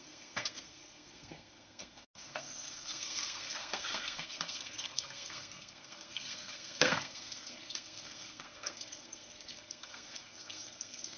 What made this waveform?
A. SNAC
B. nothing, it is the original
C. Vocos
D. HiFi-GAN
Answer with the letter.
A